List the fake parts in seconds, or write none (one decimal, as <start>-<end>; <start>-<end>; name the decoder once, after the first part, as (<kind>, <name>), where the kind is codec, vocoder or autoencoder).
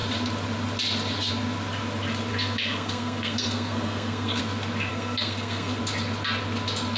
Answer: 2.3-4.4 (codec, SNAC); 4.9-5.8